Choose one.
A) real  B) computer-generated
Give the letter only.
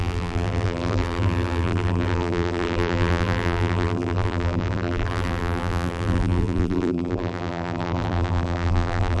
B